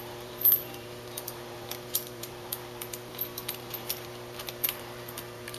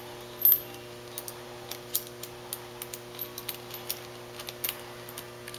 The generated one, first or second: first